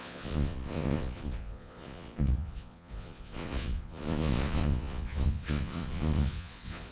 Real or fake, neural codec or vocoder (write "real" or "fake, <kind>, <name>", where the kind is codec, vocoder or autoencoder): fake, vocoder, Vocos